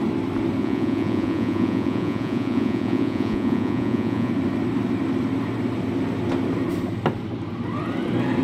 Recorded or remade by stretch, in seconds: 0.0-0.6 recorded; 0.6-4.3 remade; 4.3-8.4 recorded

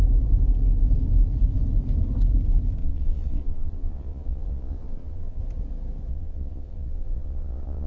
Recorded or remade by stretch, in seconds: 0.0-2.8 recorded; 2.8-5.4 remade; 5.4-6.1 recorded; 6.1-7.9 remade

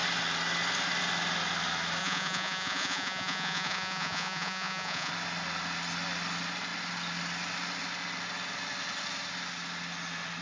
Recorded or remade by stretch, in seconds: 0.0-2.0 recorded; 2.0-5.1 remade; 5.1-10.4 recorded

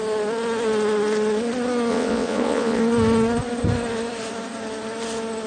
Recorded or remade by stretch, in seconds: 0.0-1.9 recorded; 1.9-2.8 remade; 2.8-5.5 recorded

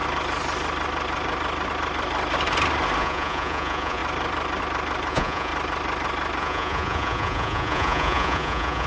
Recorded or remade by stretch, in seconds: 0.0-3.0 recorded; 3.0-4.0 remade; 4.0-5.1 recorded; 5.1-5.5 remade; 5.5-6.4 recorded; 6.4-8.9 remade

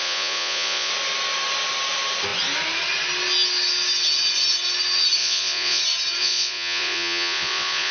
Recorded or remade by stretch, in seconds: 0.0-0.9 remade; 0.9-5.2 recorded; 5.2-5.8 remade; 5.8-6.2 recorded; 6.2-7.9 remade

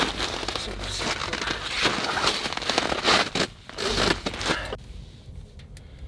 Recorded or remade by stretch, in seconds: 0.0-6.1 recorded

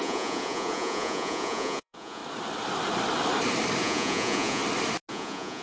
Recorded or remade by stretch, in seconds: 0.0-2.2 remade; 2.2-3.8 recorded; 3.8-4.6 remade; 4.6-5.1 recorded; 5.1-5.6 remade